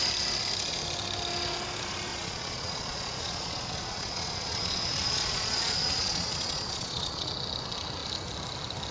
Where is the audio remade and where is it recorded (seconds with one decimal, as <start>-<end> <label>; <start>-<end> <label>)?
0.0-2.1 recorded; 2.1-7.3 remade; 7.3-8.9 recorded